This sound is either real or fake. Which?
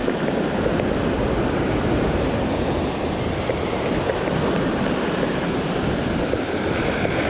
real